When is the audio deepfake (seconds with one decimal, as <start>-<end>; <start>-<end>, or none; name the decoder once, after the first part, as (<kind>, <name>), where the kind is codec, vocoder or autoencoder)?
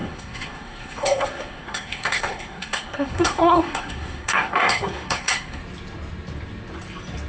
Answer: 0.0-5.6 (codec, SNAC)